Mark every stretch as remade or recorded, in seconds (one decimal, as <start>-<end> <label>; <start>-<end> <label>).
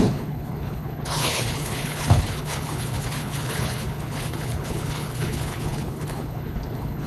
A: 0.0-7.1 remade